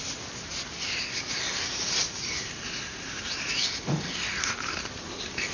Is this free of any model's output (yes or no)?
yes